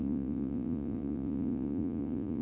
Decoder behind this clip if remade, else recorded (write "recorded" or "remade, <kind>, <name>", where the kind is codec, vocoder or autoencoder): remade, vocoder, Vocos